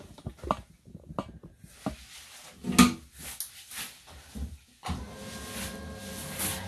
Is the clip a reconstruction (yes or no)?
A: no